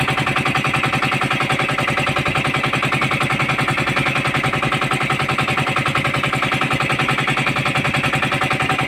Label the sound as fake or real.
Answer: real